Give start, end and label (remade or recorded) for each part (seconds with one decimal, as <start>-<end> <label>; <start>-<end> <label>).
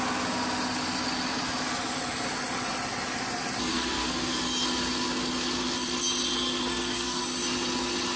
0.0-3.7 recorded; 3.7-4.4 remade; 4.4-6.7 recorded; 6.7-7.2 remade; 7.2-8.2 recorded